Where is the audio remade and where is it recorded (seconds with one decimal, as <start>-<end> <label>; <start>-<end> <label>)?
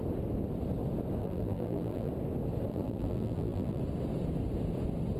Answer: 0.0-1.2 recorded; 1.2-2.1 remade; 2.1-2.7 recorded; 2.7-3.8 remade; 3.8-5.2 recorded